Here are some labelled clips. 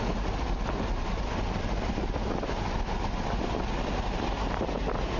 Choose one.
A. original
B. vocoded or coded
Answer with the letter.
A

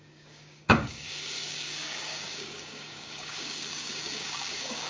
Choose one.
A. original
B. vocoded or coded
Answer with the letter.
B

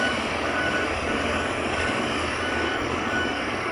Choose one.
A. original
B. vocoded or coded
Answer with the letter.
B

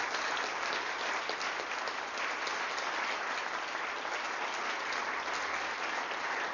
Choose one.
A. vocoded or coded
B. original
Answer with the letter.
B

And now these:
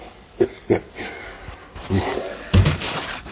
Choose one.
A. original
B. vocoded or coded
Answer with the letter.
B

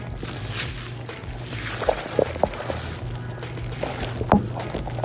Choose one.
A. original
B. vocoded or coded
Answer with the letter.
A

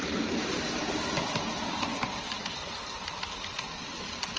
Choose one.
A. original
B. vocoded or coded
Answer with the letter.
A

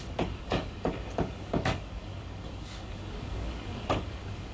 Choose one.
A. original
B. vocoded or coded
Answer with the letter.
B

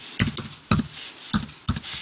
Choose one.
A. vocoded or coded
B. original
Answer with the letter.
B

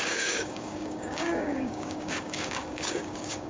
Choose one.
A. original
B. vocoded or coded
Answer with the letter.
B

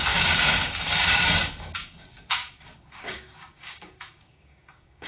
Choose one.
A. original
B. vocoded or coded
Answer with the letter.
B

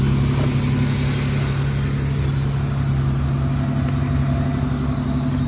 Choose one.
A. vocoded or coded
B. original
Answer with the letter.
B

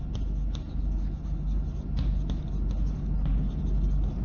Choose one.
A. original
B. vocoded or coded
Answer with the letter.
A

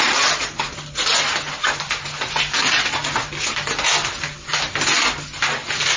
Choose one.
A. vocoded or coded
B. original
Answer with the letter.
B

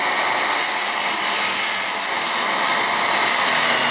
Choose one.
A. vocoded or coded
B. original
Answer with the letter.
B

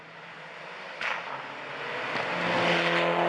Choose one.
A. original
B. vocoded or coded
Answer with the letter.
A